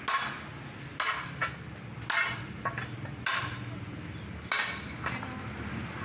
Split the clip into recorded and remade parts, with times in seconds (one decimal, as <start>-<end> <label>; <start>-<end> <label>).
0.0-6.0 recorded